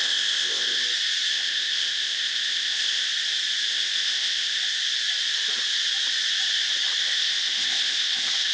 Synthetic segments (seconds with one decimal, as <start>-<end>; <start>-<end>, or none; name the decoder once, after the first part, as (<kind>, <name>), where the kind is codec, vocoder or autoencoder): 0.0-0.8 (codec, ZipCodec); 1.3-3.1; 3.7-4.6; 7.0-8.5